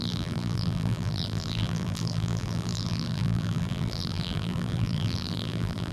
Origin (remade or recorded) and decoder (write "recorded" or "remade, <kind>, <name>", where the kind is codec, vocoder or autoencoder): remade, vocoder, BigVGAN v2